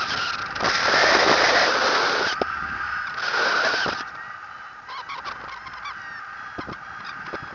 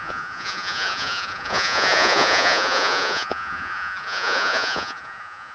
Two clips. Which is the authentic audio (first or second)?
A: first